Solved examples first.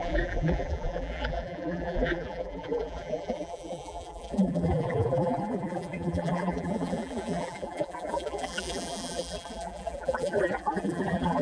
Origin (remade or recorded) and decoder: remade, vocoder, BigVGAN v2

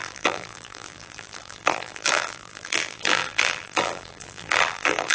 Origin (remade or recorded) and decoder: remade, vocoder, BigVGAN v2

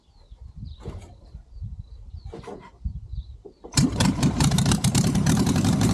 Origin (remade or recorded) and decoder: remade, vocoder, BigVGAN v2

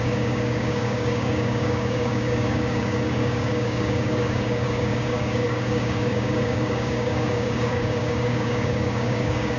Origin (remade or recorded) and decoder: remade, codec, DAC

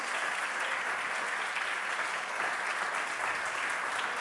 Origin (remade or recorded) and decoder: recorded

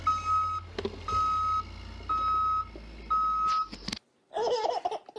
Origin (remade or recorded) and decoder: recorded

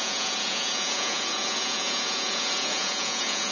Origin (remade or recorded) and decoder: remade, vocoder, Vocos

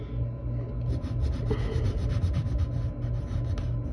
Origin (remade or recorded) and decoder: recorded